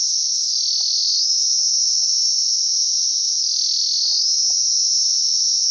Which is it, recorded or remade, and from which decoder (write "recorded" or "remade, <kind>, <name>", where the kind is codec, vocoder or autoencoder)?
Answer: recorded